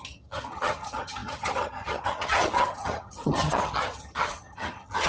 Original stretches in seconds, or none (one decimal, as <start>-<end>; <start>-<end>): none